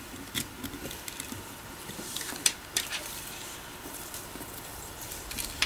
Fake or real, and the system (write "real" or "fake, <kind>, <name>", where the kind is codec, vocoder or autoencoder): fake, vocoder, BigVGAN v2